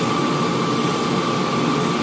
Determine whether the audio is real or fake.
real